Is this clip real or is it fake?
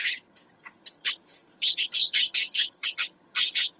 fake